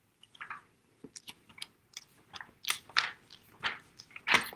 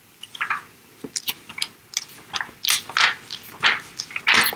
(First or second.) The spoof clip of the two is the first